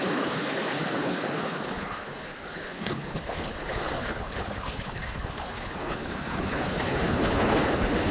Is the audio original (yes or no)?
no